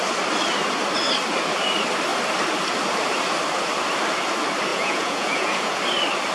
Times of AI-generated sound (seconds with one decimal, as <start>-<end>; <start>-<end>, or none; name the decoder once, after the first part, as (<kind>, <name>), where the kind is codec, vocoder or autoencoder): 4.7-5.8 (vocoder, Vocos)